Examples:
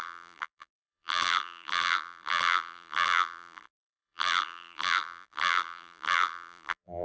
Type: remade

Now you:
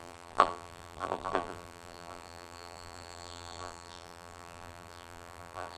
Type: remade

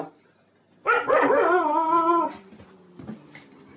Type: recorded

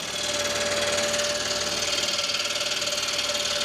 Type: recorded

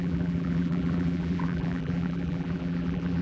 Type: remade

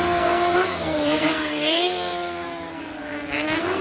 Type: remade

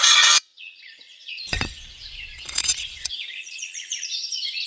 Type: remade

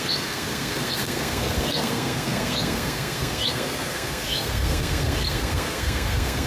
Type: remade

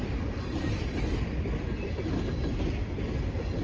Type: recorded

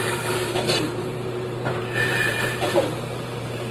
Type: remade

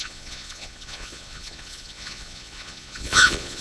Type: remade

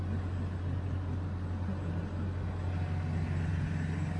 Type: recorded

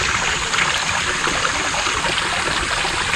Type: recorded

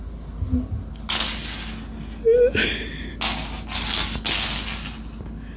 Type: recorded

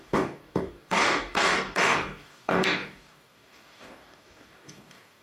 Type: remade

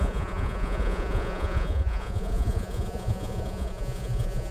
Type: remade